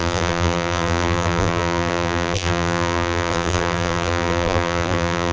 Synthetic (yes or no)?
yes